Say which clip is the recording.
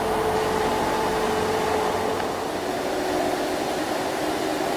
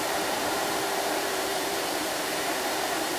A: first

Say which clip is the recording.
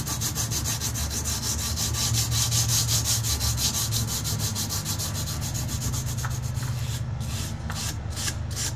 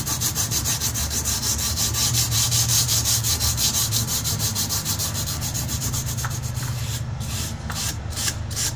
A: first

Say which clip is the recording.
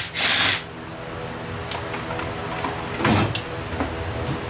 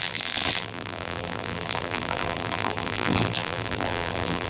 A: first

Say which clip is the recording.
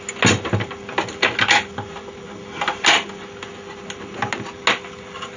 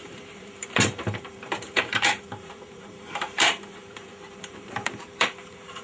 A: first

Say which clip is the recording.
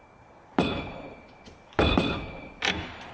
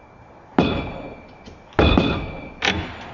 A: second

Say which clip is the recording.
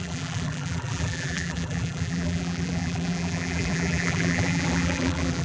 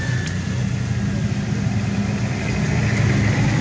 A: second